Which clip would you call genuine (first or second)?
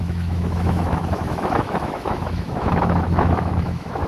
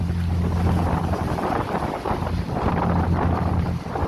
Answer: second